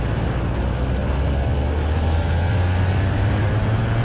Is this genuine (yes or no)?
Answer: yes